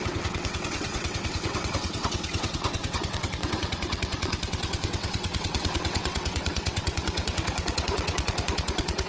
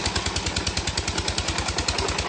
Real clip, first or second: second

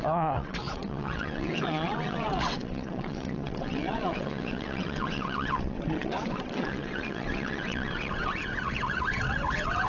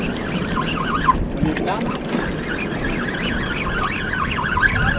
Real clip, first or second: second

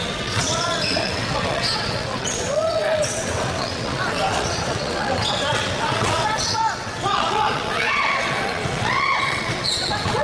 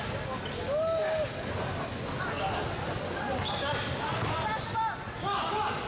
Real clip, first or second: second